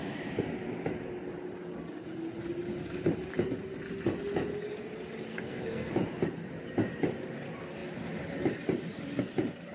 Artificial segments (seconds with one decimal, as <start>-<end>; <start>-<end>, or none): 5.3-5.9